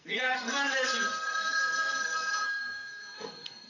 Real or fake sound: fake